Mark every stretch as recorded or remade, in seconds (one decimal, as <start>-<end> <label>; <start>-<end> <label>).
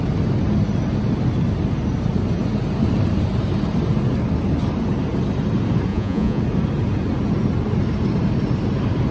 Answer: 0.0-5.9 recorded; 5.9-6.4 remade; 6.4-9.1 recorded